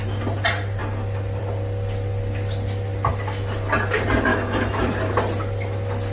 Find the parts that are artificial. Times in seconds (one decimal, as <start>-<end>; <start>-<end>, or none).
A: 4.3-4.8